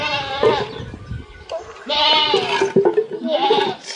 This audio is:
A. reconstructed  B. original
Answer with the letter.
B